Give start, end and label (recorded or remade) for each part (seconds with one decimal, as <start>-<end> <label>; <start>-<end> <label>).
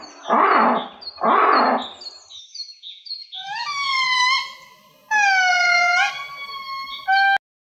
0.0-2.5 recorded; 2.5-4.2 remade; 4.2-5.5 recorded; 5.5-6.1 remade; 6.1-7.7 recorded